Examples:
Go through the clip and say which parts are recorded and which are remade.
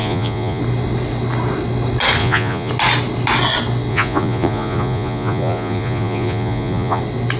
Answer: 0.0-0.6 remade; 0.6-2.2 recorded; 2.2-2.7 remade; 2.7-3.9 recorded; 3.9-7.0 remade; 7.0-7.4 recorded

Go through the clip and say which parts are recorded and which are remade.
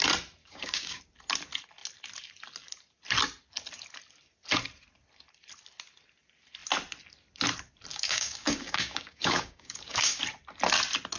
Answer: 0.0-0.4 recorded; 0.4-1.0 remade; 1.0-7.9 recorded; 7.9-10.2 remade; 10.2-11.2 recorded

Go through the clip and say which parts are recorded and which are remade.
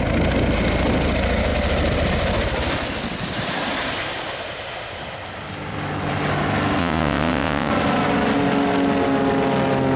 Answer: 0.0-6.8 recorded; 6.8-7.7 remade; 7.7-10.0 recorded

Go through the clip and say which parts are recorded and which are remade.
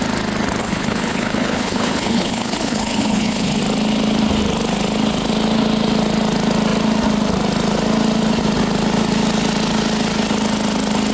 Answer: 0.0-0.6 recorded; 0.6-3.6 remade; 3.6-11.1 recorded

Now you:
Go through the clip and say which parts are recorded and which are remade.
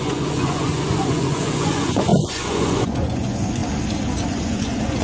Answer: 0.0-3.6 remade; 3.6-4.3 recorded; 4.3-5.0 remade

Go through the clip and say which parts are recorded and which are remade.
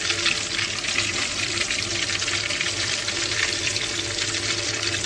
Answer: 0.0-1.1 recorded; 1.1-3.7 remade; 3.7-5.1 recorded